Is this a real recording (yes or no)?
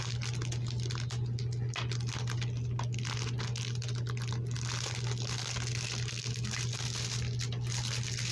yes